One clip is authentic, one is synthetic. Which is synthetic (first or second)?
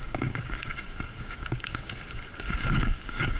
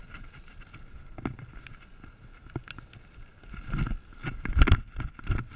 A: first